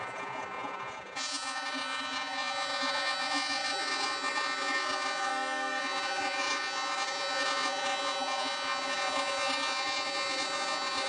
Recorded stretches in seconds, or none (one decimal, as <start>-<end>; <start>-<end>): 5.3-5.8